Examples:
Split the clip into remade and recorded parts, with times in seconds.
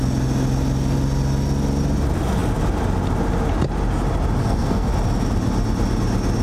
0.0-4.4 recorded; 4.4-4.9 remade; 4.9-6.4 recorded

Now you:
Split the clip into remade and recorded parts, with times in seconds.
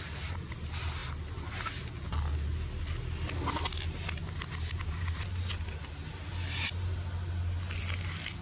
0.0-8.4 recorded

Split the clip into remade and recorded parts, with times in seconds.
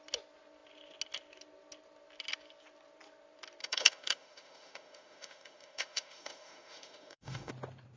0.0-3.6 recorded; 3.6-7.5 remade; 7.5-8.0 recorded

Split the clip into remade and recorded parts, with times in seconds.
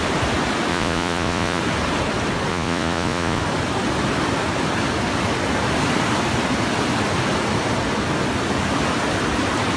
0.0-0.7 recorded; 0.7-1.6 remade; 1.6-2.5 recorded; 2.5-3.4 remade; 3.4-9.8 recorded